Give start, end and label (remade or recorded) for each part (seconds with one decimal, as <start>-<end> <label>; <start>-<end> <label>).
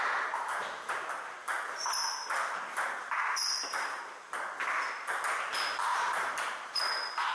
0.0-5.9 recorded; 5.9-7.3 remade